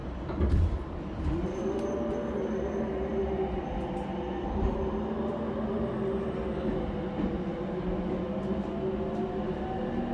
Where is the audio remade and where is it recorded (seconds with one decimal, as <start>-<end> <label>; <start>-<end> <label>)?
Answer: 0.0-10.1 recorded

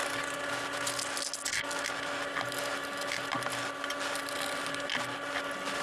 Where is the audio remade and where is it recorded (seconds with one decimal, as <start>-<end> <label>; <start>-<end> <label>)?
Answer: 0.0-5.8 recorded

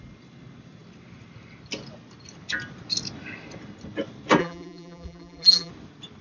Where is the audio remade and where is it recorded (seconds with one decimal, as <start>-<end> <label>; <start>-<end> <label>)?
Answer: 0.0-4.4 recorded; 4.4-5.7 remade; 5.7-6.2 recorded

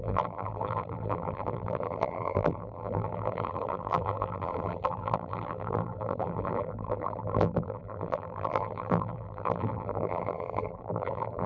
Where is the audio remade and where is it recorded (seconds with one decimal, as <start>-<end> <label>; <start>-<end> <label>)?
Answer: 0.0-11.5 remade